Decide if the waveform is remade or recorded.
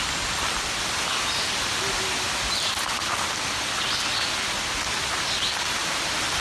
recorded